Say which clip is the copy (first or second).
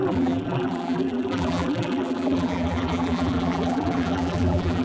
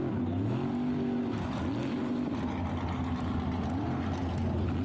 first